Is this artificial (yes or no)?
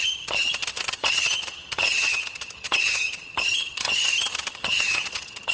yes